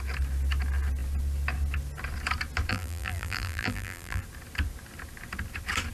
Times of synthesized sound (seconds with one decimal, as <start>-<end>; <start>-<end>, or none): 2.7-4.2